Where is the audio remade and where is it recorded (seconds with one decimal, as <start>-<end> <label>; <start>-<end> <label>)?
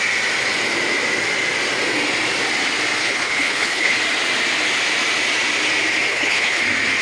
0.0-3.0 recorded; 3.0-4.0 remade; 4.0-6.1 recorded; 6.1-6.6 remade; 6.6-7.0 recorded